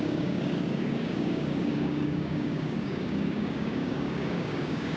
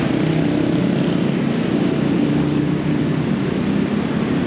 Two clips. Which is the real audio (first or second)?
second